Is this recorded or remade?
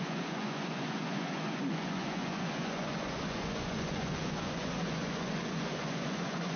remade